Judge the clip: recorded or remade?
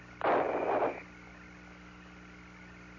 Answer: recorded